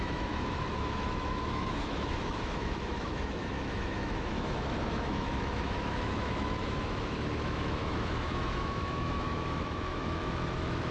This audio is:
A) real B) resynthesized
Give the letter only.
B